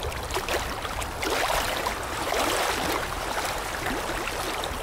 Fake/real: real